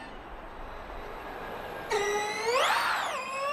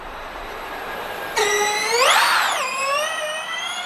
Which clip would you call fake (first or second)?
second